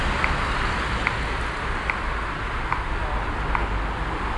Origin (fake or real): real